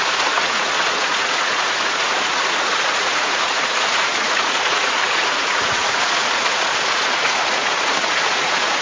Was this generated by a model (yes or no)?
yes